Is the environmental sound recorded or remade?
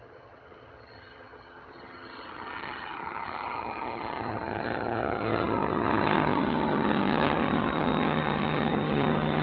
remade